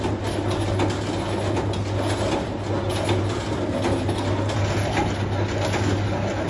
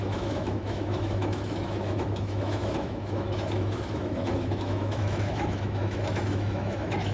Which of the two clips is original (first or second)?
first